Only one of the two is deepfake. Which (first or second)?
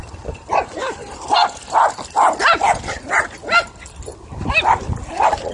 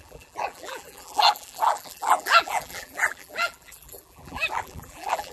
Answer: second